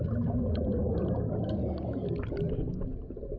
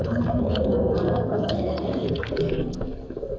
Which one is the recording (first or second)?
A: first